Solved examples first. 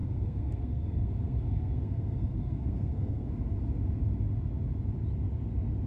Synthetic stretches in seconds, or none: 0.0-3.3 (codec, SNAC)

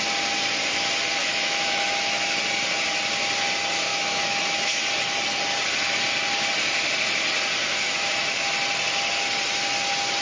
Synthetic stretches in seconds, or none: 1.2-2.4 (autoencoder, DAC-VAE); 3.9-4.8; 7.6-8.1